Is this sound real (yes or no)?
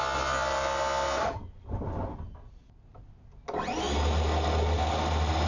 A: yes